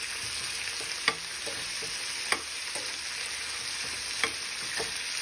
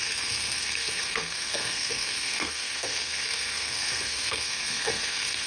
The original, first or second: first